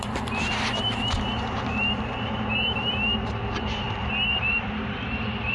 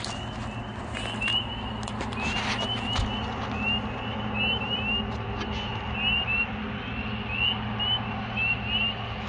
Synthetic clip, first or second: first